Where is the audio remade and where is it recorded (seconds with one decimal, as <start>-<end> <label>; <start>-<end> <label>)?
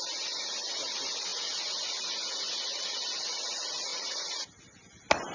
0.0-5.3 recorded